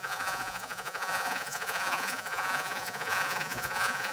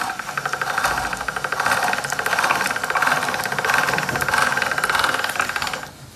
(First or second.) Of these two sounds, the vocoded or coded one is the first